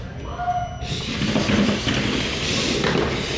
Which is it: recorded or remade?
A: recorded